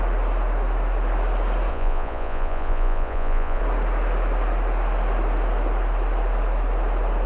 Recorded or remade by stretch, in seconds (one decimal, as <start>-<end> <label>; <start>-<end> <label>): 0.0-1.7 recorded; 1.7-3.6 remade; 3.6-7.3 recorded